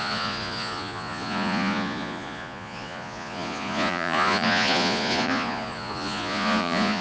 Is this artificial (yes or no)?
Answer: yes